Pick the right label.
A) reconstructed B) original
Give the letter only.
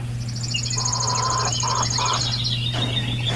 B